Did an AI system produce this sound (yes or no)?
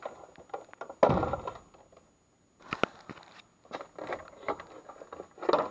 no